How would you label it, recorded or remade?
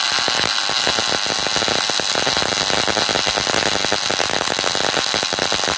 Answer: recorded